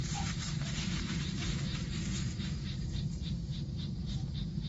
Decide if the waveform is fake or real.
fake